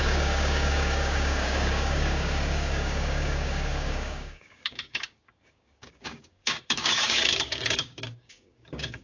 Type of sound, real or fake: fake